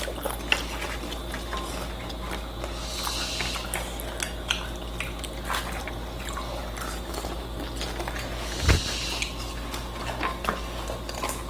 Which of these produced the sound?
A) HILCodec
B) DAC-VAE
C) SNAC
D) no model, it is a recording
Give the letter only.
D